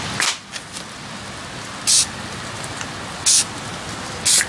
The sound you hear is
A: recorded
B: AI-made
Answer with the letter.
A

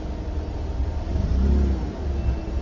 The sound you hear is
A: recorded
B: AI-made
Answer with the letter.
A